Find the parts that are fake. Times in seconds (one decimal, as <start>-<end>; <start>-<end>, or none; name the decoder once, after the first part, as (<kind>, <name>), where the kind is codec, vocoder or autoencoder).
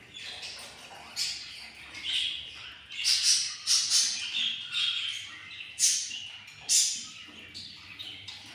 none